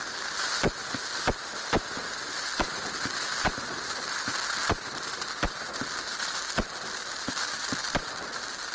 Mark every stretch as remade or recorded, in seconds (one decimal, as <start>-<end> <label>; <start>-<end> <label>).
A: 0.0-8.7 recorded